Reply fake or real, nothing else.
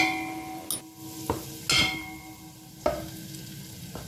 real